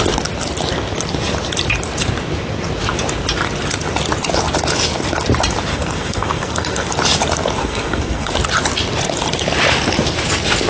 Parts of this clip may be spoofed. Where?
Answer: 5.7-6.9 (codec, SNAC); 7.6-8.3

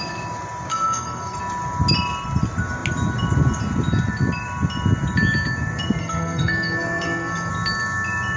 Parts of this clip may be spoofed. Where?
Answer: 0.7-1.4 (codec, SNAC); 6.0-7.5

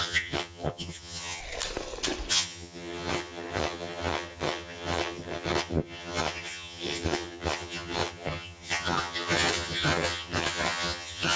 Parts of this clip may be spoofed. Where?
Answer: 0.0-1.4 (vocoder, HiFi-GAN); 2.3-11.4

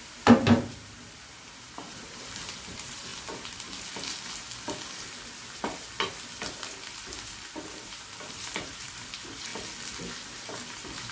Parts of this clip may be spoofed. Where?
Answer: 0.0-3.1 (vocoder, BigVGAN v2); 7.9-9.5; 10.3-11.1

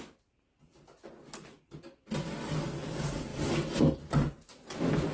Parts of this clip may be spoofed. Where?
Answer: none

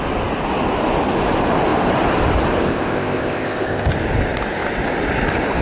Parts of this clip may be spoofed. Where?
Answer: 2.6-3.9 (codec, ZipCodec)

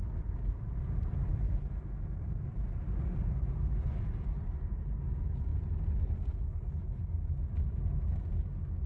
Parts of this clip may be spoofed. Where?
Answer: none

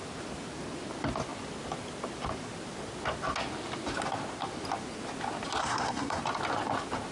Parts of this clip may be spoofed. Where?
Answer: 5.6-6.2 (codec, SNAC)